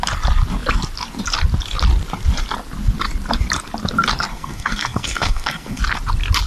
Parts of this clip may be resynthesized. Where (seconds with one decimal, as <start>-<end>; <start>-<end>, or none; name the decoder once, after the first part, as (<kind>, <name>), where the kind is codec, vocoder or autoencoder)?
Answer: 4.3-5.8 (codec, SNAC)